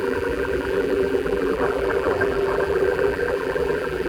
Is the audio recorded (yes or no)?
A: no